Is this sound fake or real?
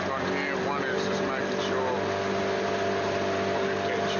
real